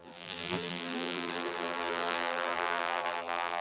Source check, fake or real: fake